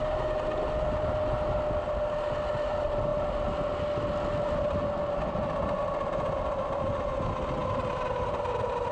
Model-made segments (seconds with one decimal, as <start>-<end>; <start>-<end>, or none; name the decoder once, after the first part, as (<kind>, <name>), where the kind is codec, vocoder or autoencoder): none